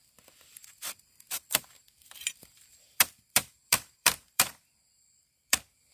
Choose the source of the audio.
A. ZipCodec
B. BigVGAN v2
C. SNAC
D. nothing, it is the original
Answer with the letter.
B